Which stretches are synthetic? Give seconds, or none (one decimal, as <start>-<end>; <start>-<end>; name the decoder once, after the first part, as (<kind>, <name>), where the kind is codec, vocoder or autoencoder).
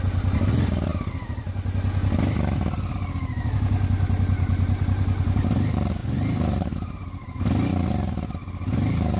6.0-7.4 (vocoder, BigVGAN v2)